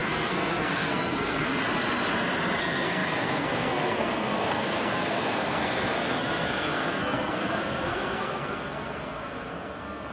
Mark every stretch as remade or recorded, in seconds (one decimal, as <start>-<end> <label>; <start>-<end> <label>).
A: 0.0-1.5 remade; 1.5-2.6 recorded; 2.6-10.1 remade